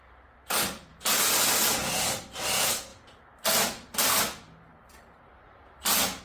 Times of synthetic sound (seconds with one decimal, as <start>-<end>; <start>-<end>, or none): none